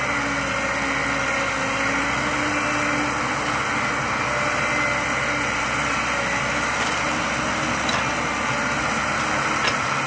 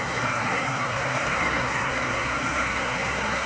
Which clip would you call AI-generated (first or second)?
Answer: second